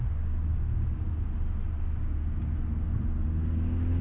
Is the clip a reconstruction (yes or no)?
no